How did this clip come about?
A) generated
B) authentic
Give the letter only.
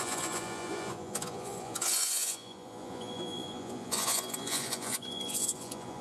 A